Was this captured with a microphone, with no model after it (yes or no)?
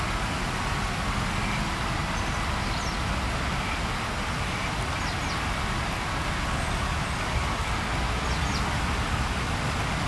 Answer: yes